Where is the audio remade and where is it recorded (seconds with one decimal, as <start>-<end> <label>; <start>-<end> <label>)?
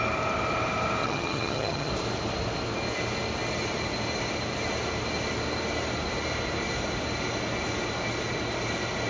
0.0-1.0 recorded; 1.0-1.9 remade; 1.9-9.1 recorded